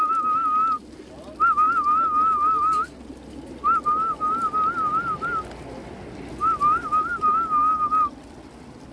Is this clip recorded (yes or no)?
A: yes